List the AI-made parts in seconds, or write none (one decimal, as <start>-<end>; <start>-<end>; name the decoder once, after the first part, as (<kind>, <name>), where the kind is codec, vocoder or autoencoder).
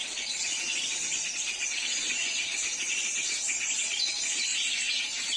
0.0-0.7 (vocoder, Vocos); 1.5-2.9; 4.5-5.0